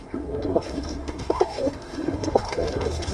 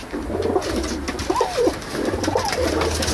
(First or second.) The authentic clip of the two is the second